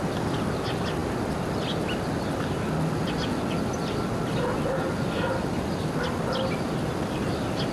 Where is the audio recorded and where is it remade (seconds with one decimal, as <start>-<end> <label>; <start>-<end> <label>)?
0.0-7.7 recorded